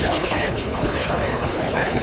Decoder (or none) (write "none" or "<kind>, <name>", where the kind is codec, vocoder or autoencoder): codec, HILCodec